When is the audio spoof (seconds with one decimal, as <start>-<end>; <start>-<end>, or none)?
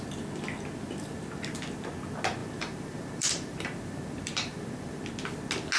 2.4-5.0